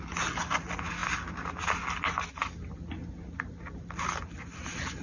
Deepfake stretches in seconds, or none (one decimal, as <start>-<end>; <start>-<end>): none